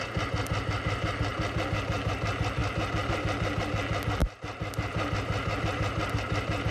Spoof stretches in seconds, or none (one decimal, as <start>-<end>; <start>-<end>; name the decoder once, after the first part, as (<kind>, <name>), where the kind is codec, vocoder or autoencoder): none